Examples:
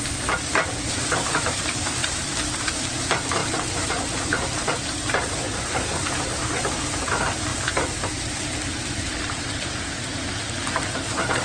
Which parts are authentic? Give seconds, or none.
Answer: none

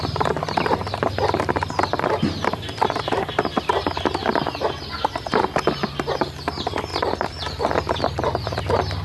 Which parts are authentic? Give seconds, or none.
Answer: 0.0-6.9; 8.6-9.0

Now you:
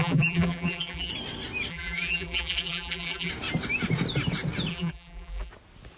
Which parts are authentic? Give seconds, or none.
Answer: 1.1-1.7; 3.3-4.7; 5.5-6.0

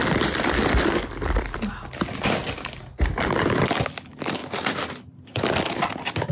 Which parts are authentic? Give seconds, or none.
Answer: 0.0-6.3

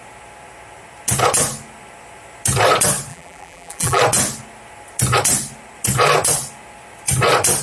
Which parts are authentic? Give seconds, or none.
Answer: 0.0-3.1; 4.0-7.6

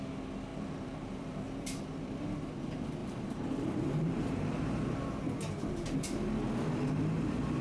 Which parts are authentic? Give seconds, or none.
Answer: 0.0-0.5; 1.8-3.0; 4.9-7.6

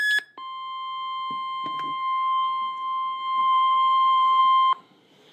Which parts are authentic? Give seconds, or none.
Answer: 0.0-3.4; 4.4-5.3

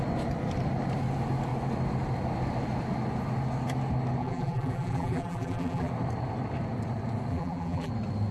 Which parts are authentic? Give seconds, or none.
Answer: 0.0-4.2; 5.9-7.3; 7.9-8.3